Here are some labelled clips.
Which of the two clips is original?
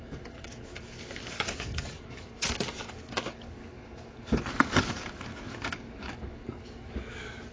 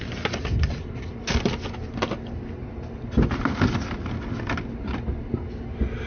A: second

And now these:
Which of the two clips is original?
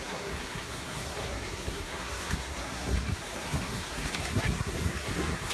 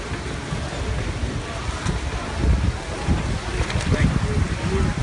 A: second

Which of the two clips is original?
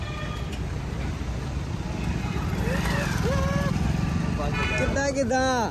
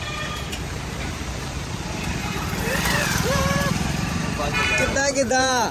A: first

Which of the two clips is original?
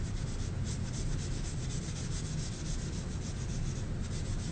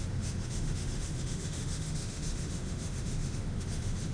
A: first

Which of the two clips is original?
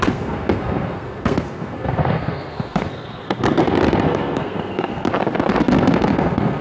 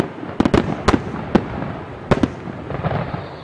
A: second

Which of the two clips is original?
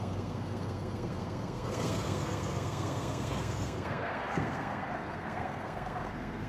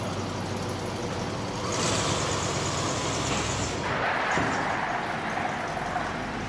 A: second